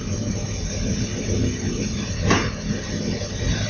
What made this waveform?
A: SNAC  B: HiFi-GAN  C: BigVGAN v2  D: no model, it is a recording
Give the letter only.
D